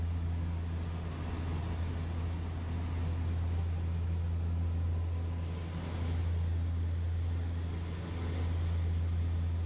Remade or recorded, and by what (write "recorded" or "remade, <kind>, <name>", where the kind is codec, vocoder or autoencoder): recorded